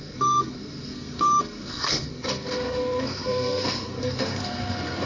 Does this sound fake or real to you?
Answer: fake